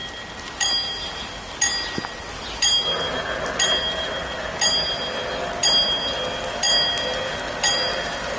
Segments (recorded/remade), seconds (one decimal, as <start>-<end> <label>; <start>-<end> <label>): 0.0-8.4 recorded